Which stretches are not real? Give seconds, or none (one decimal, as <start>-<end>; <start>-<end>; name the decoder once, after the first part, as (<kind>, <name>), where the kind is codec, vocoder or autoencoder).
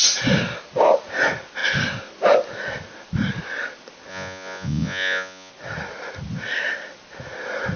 4.1-5.5 (vocoder, Vocos)